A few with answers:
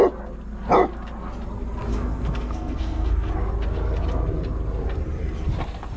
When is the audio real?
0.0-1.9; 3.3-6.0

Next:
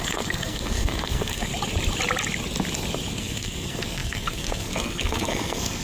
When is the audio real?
1.5-3.2

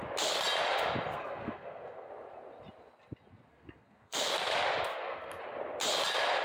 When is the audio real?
0.0-1.1; 2.1-3.5; 4.3-4.9; 5.4-6.4